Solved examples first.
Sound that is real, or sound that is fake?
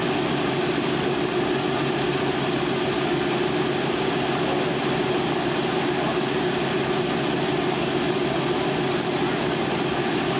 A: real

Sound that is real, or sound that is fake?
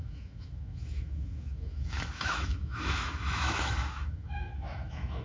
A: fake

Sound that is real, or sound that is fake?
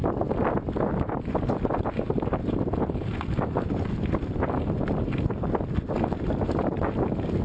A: real